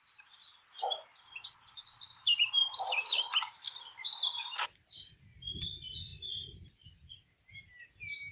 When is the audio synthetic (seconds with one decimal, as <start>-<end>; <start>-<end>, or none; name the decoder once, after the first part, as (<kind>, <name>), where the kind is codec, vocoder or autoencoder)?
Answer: 1.1-3.2 (vocoder, BigVGAN v2)